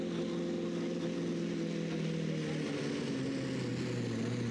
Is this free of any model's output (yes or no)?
yes